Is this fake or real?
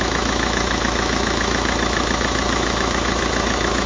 fake